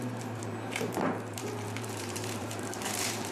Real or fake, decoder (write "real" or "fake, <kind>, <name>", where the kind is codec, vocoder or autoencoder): fake, vocoder, BigVGAN v2